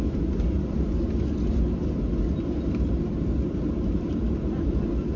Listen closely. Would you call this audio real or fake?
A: real